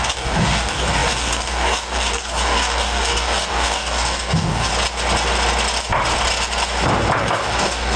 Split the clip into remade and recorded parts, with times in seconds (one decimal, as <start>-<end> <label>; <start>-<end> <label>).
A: 0.0-4.7 remade; 4.7-7.2 recorded; 7.2-8.0 remade